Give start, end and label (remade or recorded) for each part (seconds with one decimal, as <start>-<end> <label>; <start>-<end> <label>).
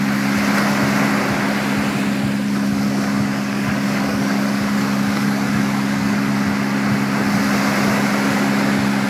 0.0-2.7 recorded; 2.7-6.3 remade; 6.3-9.1 recorded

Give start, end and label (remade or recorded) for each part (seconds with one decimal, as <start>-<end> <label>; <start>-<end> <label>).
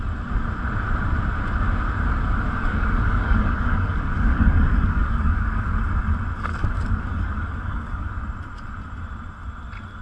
0.0-2.6 recorded; 2.6-5.8 remade; 5.8-6.5 recorded; 6.5-8.2 remade; 8.2-10.0 recorded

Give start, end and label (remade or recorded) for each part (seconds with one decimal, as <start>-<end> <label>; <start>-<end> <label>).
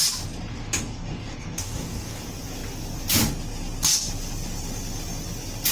0.0-0.5 recorded; 0.5-2.2 remade; 2.2-5.7 recorded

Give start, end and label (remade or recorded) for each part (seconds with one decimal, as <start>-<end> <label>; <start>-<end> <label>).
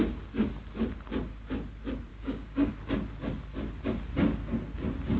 0.0-2.1 recorded; 2.1-2.7 remade; 2.7-5.2 recorded